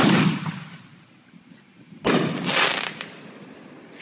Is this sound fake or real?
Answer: fake